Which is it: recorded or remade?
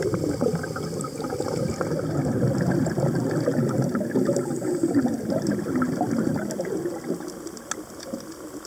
recorded